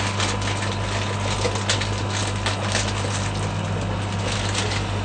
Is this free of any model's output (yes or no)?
yes